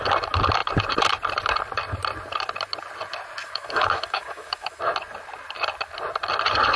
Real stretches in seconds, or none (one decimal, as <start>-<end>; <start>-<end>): 0.0-3.4; 4.8-6.8